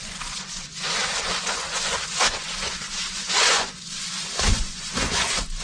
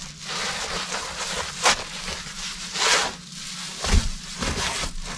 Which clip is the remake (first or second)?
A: first